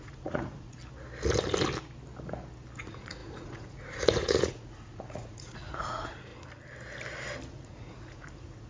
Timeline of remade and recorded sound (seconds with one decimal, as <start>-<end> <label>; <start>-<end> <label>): 0.0-0.8 remade; 0.8-2.8 recorded; 2.8-6.3 remade; 6.3-7.5 recorded; 7.5-8.7 remade